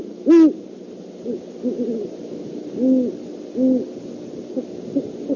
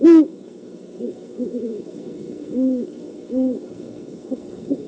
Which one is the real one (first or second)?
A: first